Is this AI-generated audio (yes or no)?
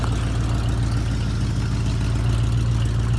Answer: no